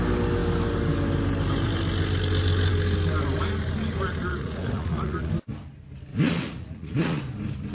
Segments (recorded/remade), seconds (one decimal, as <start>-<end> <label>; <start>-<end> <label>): 0.0-4.3 recorded; 4.3-5.3 remade; 5.3-6.1 recorded; 6.1-7.2 remade; 7.2-7.7 recorded